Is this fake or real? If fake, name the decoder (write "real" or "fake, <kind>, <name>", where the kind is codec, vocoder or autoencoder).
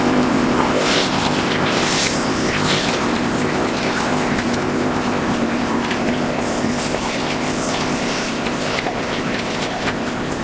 fake, codec, ZipCodec